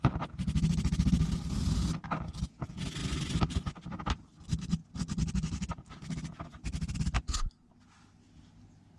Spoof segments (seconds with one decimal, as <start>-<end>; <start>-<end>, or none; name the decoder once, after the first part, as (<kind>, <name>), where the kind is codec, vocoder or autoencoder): none

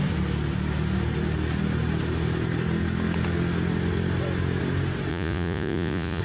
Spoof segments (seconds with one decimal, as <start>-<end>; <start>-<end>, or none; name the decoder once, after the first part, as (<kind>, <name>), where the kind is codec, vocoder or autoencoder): 5.1-6.2 (vocoder, Vocos)

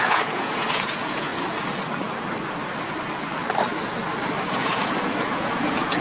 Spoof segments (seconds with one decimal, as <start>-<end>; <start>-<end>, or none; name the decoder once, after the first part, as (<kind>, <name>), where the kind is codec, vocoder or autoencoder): 0.0-1.3 (vocoder, Vocos); 4.5-6.0